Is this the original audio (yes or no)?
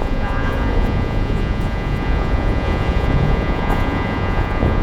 no